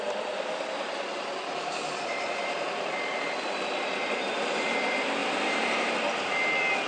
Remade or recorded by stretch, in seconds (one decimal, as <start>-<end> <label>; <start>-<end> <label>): 0.0-1.5 recorded; 1.5-4.3 remade; 4.3-5.2 recorded; 5.2-5.9 remade; 5.9-6.9 recorded